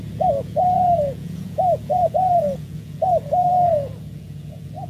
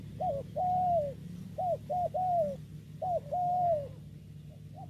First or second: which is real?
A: second